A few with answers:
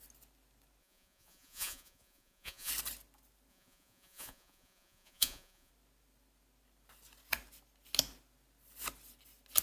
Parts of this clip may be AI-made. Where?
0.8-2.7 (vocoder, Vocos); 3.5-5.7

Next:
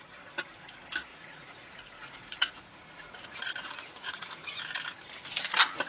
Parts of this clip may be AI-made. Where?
1.1-4.6 (vocoder, Vocos)

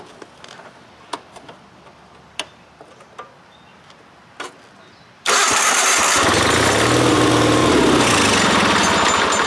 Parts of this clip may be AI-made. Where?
none

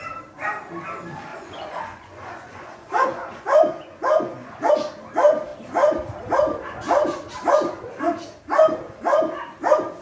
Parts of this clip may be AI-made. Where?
1.3-4.7 (vocoder, Vocos)

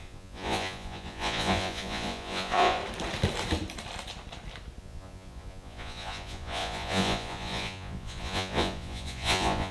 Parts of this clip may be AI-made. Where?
0.0-2.8 (vocoder, Vocos); 4.8-9.7